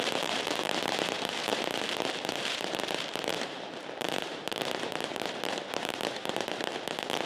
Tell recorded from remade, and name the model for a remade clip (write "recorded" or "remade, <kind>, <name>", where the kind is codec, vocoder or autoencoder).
remade, vocoder, BigVGAN v2